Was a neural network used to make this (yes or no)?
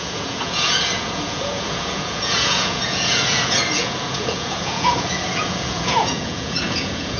yes